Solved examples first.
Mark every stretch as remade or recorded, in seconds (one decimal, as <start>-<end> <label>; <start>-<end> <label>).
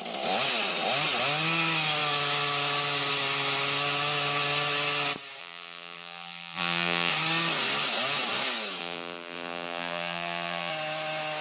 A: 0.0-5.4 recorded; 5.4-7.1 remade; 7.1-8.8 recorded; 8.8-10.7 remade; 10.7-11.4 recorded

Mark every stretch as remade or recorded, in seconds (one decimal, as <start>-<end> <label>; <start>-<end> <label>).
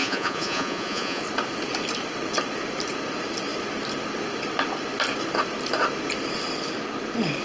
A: 0.0-1.2 remade; 1.2-7.4 recorded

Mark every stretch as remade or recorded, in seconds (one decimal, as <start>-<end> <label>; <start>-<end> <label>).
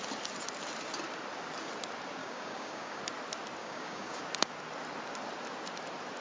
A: 0.0-2.2 recorded; 2.2-3.0 remade; 3.0-3.6 recorded; 3.6-4.2 remade; 4.2-6.2 recorded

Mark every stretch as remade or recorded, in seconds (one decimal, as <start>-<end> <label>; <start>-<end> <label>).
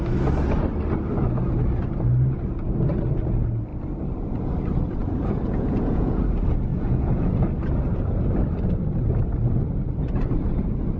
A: 0.0-5.0 recorded; 5.0-6.2 remade; 6.2-6.7 recorded; 6.7-7.3 remade; 7.3-11.0 recorded